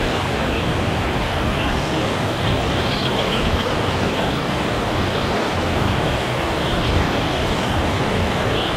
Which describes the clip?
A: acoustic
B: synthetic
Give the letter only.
B